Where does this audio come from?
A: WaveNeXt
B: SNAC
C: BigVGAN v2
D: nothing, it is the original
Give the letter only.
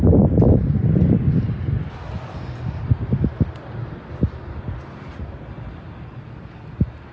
D